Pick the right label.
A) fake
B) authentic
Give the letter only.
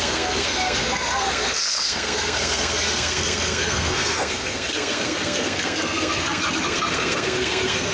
A